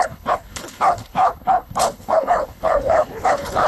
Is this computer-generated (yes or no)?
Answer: yes